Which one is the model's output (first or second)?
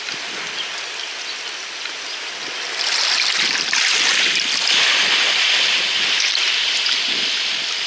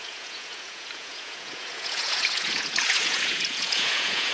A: second